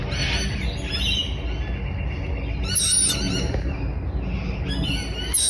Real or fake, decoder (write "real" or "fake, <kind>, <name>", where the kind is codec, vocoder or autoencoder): real